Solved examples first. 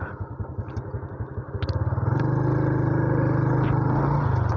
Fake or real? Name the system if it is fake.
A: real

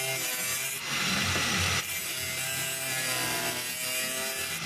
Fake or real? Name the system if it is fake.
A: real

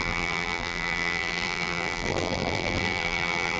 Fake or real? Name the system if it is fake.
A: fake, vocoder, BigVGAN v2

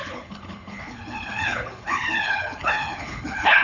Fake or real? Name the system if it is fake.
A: fake, codec, HILCodec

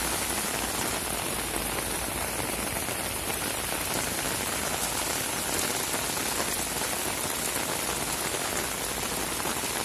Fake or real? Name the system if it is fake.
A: real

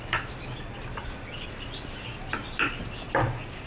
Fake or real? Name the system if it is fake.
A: real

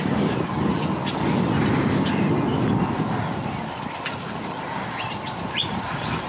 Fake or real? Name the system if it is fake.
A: real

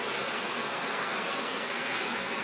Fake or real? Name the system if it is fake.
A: fake, codec, SNAC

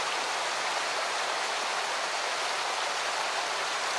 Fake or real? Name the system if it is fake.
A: real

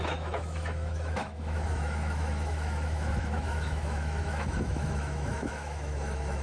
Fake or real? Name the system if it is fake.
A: fake, autoencoder, DAC-VAE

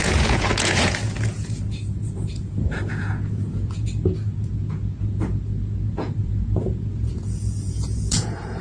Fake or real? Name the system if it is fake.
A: fake, vocoder, Vocos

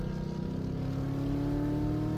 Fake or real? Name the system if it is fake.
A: real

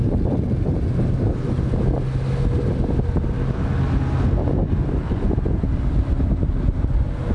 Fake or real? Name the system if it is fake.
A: real